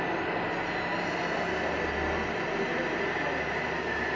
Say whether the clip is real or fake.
real